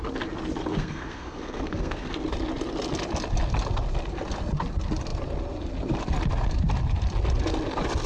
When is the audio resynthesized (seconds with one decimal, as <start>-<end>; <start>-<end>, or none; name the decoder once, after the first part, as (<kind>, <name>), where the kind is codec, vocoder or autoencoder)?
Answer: 0.7-2.1 (codec, SNAC)